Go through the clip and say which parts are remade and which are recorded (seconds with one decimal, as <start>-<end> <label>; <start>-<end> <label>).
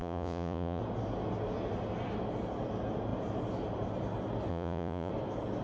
0.0-0.8 remade; 0.8-4.5 recorded; 4.5-5.1 remade; 5.1-5.6 recorded